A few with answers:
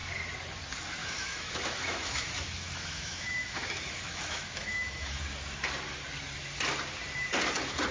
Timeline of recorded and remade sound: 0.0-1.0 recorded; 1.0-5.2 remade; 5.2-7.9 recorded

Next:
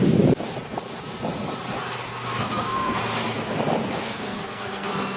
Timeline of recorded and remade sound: 0.0-2.4 recorded; 2.4-3.0 remade; 3.0-3.9 recorded; 3.9-5.2 remade

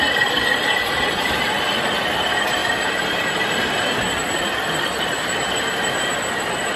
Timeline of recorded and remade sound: 0.0-2.6 recorded; 2.6-3.3 remade; 3.3-6.8 recorded

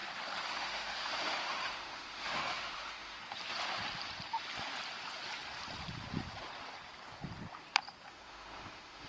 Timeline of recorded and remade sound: 0.0-0.5 recorded; 0.5-3.2 remade; 3.2-8.1 recorded; 8.1-9.1 remade

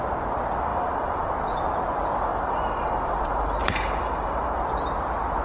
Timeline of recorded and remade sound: 0.0-0.7 recorded; 0.7-1.3 remade; 1.3-2.3 recorded; 2.3-4.6 remade; 4.6-5.4 recorded

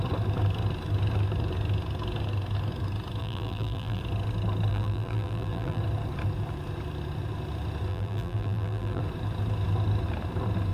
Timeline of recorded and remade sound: 0.0-3.2 recorded; 3.2-4.0 remade; 4.0-4.7 recorded; 4.7-5.8 remade; 5.8-7.9 recorded; 7.9-9.0 remade; 9.0-10.7 recorded

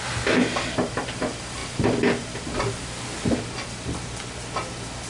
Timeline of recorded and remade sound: 0.0-5.1 recorded